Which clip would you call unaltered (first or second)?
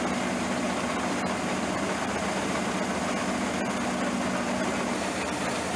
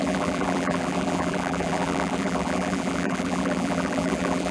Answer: first